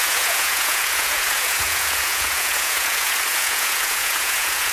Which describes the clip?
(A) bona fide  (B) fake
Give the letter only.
B